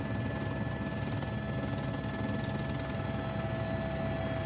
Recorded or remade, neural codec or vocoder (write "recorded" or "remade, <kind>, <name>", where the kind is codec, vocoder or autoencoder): recorded